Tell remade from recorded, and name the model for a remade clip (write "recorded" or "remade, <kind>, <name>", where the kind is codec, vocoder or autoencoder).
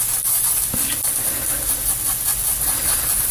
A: recorded